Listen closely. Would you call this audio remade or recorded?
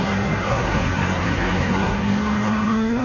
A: remade